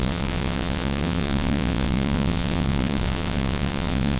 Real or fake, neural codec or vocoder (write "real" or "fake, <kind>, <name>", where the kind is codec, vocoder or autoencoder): fake, vocoder, WaveNeXt